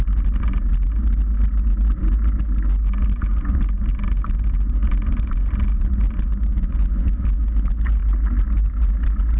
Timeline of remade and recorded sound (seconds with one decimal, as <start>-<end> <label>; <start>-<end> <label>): 0.0-9.4 recorded